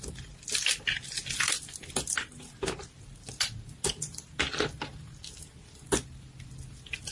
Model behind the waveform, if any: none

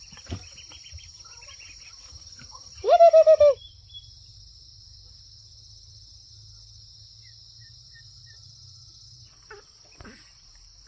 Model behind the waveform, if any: none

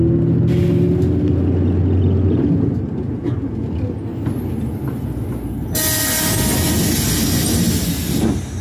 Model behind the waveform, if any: none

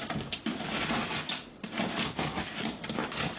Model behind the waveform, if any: none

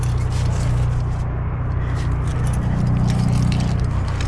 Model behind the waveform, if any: none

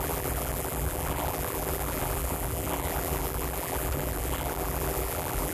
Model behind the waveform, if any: vocoder, BigVGAN v2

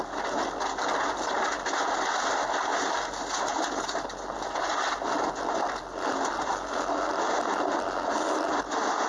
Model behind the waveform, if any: none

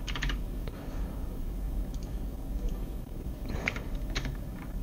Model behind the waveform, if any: codec, DAC